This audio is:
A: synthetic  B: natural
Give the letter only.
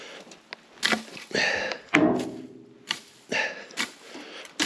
B